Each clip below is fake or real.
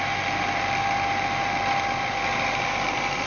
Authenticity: real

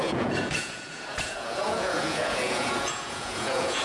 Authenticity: fake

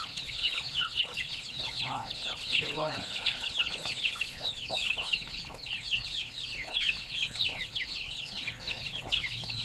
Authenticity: fake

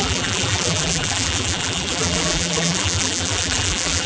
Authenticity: fake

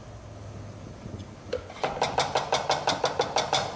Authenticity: real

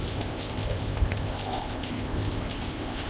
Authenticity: fake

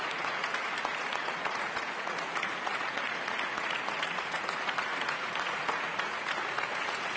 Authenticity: fake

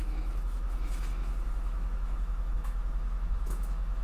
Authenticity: fake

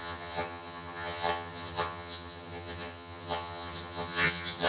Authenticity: fake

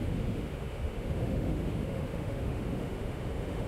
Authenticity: fake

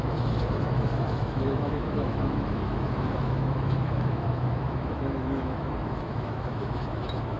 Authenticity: fake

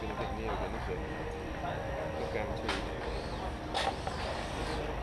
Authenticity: real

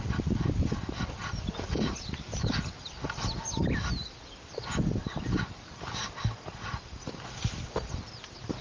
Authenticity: real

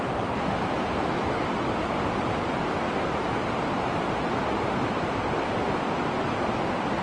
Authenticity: real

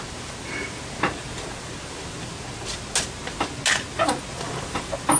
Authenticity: real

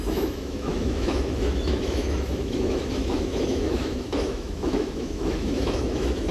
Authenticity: fake